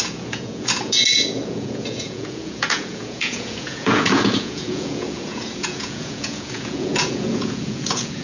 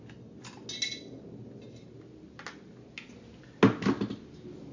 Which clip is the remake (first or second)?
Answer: first